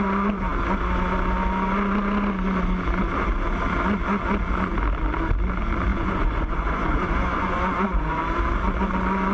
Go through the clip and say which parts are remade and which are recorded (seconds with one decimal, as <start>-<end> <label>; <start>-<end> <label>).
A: 0.0-5.9 recorded; 5.9-8.2 remade; 8.2-9.3 recorded